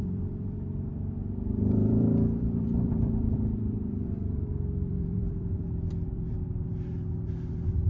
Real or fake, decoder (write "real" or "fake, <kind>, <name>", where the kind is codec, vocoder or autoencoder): fake, vocoder, BigVGAN v2